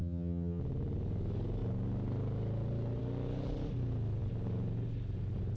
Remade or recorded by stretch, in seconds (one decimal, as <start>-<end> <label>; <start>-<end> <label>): 0.0-0.6 remade; 0.6-5.6 recorded